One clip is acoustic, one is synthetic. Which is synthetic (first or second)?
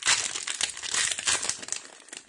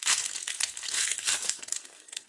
second